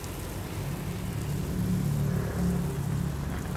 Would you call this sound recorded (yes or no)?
yes